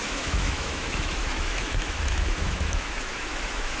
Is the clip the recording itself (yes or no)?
no